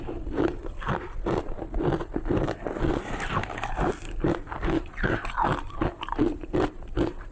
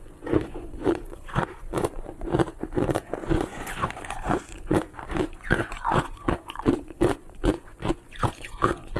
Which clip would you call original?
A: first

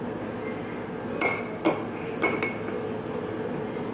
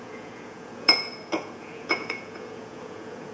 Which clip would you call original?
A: first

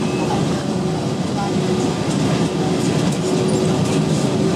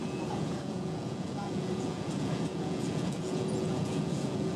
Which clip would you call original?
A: first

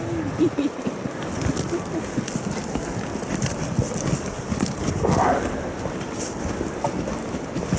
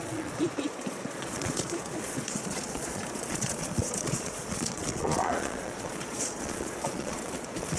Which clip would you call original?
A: first